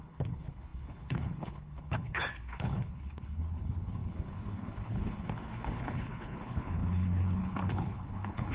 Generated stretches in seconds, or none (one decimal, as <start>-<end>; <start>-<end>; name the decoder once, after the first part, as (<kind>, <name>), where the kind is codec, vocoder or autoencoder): 0.0-8.5 (codec, HILCodec)

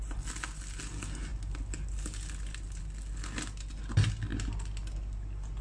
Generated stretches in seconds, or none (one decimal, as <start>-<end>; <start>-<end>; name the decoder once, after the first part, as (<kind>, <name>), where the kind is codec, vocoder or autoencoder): none

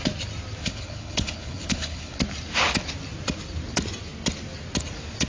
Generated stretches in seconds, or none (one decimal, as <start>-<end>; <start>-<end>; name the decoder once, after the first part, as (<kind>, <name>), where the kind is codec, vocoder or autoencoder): 0.6-2.2 (codec, HILCodec)

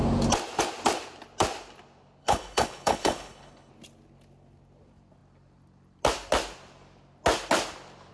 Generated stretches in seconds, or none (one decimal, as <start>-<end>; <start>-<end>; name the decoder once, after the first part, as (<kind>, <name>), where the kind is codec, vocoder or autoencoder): 2.2-3.7 (codec, HILCodec)

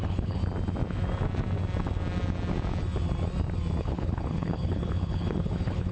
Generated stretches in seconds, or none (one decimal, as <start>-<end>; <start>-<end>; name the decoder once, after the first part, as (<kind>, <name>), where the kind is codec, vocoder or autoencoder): 0.0-0.4 (codec, HILCodec); 3.8-5.9

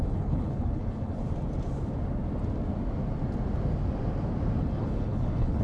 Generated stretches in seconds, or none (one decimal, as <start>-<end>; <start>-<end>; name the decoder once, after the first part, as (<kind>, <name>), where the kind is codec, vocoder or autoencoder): 0.0-1.2 (codec, HILCodec); 4.6-5.6

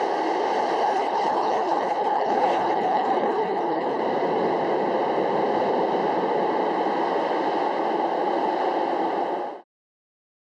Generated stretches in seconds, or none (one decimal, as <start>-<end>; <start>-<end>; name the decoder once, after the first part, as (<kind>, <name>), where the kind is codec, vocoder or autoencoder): 0.8-4.0 (codec, HILCodec)

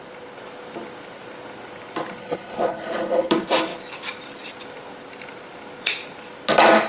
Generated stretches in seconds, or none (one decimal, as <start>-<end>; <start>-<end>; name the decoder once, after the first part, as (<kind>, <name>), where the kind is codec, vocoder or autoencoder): 2.2-3.3 (codec, HILCodec)